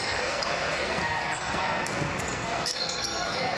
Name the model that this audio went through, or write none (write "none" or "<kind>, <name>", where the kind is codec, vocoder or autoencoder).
codec, SNAC